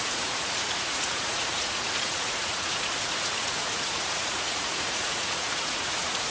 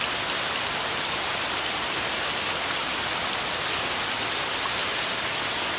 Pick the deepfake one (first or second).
first